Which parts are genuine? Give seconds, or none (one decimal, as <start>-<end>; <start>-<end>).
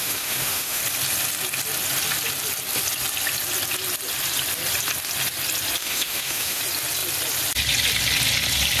0.8-5.8; 6.6-8.8